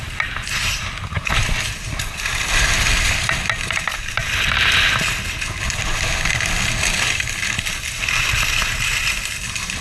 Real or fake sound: real